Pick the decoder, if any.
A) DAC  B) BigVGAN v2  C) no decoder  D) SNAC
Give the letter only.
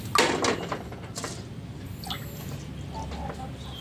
C